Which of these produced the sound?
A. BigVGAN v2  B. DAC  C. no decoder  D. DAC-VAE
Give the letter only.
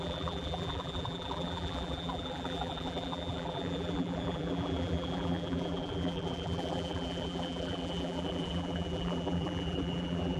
A